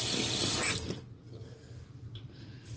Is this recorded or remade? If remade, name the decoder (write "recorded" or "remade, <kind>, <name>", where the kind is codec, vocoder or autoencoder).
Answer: recorded